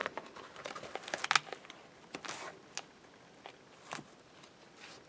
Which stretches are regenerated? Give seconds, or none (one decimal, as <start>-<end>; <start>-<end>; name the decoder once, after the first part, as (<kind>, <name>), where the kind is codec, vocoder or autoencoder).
none